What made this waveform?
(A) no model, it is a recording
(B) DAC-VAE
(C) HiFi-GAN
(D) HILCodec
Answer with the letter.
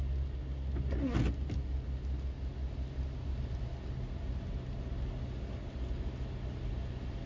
A